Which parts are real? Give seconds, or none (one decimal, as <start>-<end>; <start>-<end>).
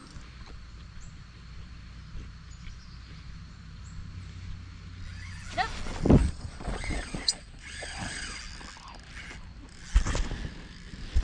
0.0-6.2; 8.4-11.2